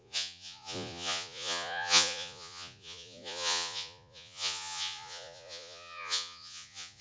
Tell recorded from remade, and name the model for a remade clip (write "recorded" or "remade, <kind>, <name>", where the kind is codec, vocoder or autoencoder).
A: remade, vocoder, Vocos